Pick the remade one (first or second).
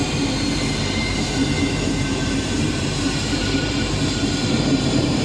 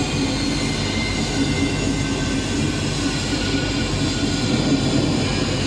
first